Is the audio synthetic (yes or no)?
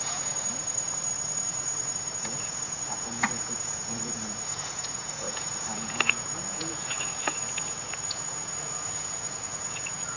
yes